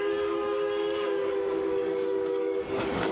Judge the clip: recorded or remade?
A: remade